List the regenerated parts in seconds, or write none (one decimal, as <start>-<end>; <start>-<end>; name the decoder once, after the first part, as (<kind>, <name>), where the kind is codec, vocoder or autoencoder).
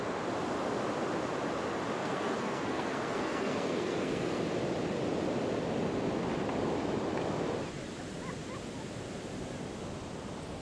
2.0-4.4 (codec, SNAC)